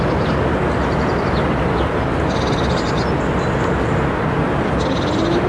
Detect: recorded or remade recorded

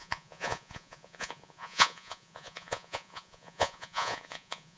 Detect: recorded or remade remade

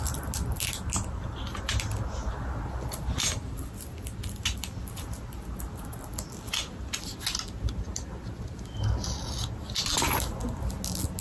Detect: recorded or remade recorded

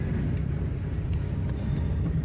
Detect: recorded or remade recorded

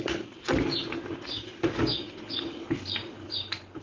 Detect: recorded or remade recorded